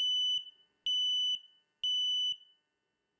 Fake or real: real